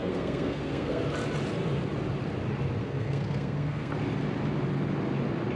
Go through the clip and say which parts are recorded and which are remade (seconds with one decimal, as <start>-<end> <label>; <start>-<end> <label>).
0.0-1.0 remade; 1.0-2.8 recorded; 2.8-3.9 remade; 3.9-5.6 recorded